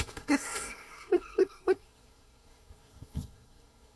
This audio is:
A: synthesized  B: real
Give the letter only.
A